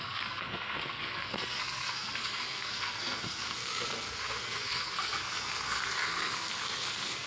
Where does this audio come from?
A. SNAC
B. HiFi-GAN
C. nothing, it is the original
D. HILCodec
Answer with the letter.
A